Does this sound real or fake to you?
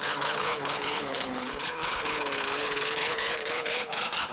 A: fake